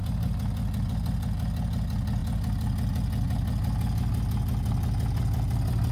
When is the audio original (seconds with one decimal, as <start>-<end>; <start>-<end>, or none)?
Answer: 0.0-5.9